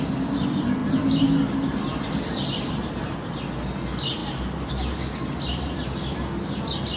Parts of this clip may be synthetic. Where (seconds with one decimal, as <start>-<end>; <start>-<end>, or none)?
none